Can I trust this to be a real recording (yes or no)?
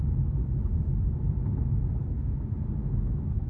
yes